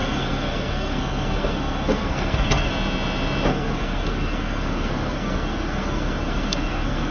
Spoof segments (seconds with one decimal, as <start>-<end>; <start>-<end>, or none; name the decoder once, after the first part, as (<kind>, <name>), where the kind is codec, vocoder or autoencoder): 0.0-2.7 (codec, SNAC); 3.5-7.1